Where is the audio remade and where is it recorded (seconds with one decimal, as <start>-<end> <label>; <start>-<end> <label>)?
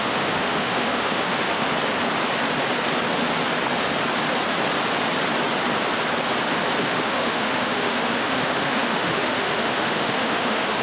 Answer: 0.0-1.7 remade; 1.7-6.8 recorded; 6.8-10.8 remade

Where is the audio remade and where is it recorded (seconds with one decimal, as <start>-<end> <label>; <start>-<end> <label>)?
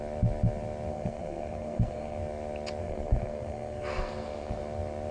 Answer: 0.0-0.9 recorded; 0.9-2.2 remade; 2.2-2.8 recorded; 2.8-4.6 remade; 4.6-5.1 recorded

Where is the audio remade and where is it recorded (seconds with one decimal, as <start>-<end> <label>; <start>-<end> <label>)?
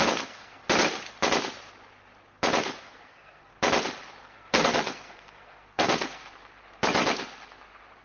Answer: 0.0-0.6 remade; 0.6-2.8 recorded; 2.8-3.5 remade; 3.5-4.2 recorded; 4.2-6.2 remade; 6.2-8.0 recorded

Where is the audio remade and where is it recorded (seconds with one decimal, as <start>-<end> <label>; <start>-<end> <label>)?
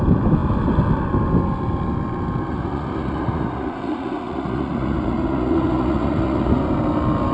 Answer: 0.0-2.5 recorded; 2.5-6.6 remade; 6.6-7.3 recorded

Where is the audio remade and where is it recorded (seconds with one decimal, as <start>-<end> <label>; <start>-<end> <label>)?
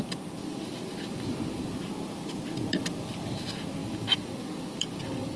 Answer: 0.0-0.4 recorded; 0.4-1.7 remade; 1.7-3.8 recorded; 3.8-5.4 remade